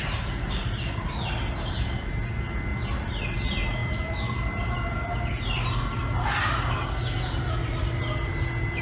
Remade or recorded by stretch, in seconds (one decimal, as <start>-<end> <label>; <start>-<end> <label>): 0.0-8.8 recorded